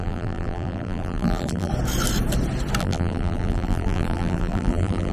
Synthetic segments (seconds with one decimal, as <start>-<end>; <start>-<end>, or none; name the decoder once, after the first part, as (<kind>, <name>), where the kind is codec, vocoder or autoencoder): 0.0-1.7 (vocoder, BigVGAN v2); 2.8-5.1